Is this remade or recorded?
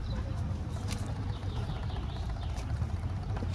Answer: remade